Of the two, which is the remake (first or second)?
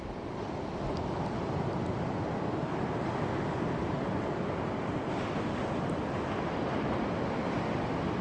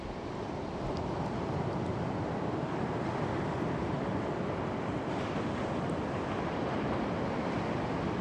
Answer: second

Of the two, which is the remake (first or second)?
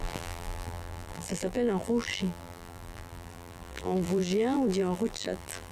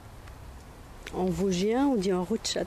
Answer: first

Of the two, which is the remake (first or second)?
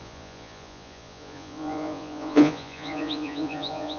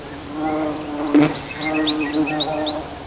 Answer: first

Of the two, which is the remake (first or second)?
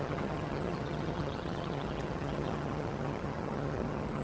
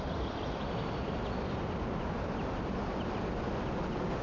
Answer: first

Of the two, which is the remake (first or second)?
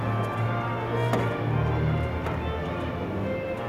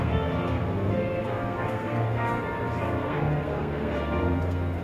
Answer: second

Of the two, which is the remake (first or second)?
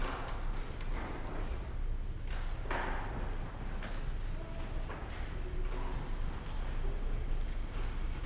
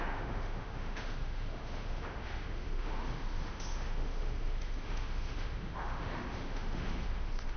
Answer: second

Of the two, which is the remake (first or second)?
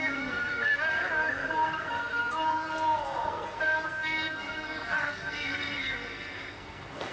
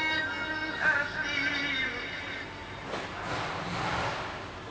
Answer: first